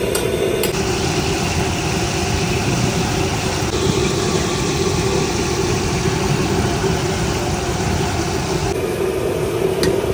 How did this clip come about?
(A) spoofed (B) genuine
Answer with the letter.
B